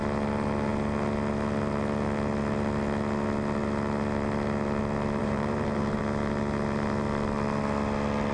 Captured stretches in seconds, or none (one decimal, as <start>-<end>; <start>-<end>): 0.0-5.2; 6.0-8.3

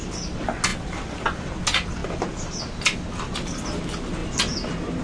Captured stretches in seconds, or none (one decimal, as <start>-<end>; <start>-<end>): 0.0-5.0

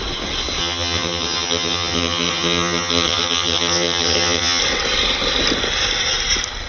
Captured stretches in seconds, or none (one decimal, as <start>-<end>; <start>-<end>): 0.0-0.6; 4.6-6.7

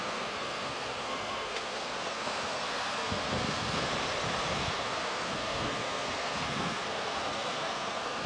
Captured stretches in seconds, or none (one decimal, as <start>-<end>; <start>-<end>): 3.9-4.5

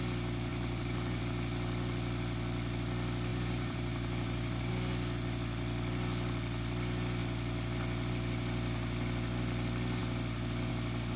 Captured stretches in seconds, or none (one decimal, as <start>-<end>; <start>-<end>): 0.0-0.5; 1.2-3.3; 4.7-11.2